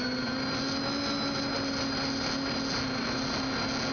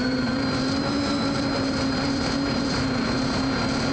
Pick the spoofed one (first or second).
second